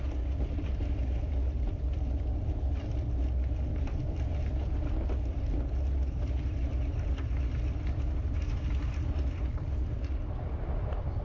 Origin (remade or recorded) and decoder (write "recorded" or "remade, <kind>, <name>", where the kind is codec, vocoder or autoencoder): remade, vocoder, BigVGAN v2